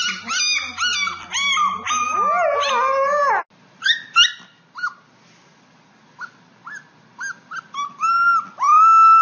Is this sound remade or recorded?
recorded